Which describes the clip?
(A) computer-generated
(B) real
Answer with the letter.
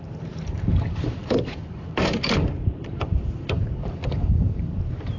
A